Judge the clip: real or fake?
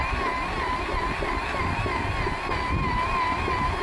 real